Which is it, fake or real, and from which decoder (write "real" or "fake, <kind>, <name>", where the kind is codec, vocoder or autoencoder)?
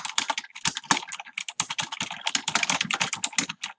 real